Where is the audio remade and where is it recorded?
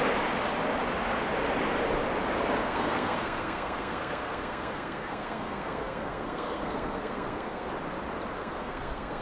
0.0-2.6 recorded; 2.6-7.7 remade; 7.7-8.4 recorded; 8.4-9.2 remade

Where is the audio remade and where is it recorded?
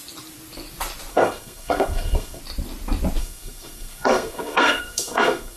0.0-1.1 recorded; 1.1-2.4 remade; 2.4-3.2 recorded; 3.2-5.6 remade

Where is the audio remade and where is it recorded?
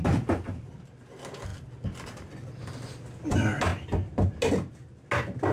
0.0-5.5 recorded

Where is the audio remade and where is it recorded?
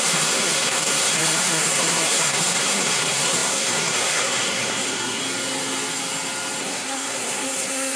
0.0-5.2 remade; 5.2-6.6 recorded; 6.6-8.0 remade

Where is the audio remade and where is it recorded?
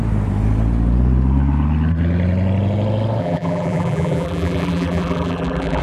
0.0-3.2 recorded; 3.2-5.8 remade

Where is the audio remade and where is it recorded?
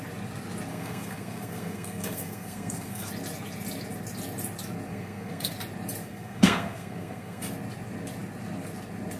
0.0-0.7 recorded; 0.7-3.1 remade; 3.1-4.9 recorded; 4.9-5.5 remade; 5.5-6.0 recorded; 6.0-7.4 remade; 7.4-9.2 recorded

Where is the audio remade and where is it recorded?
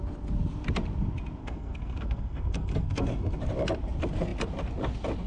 0.0-1.4 recorded; 1.4-3.4 remade; 3.4-5.3 recorded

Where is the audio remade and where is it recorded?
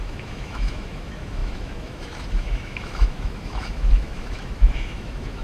0.0-5.4 remade